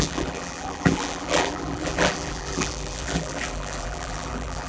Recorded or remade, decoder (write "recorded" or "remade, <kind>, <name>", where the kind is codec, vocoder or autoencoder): remade, vocoder, BigVGAN v2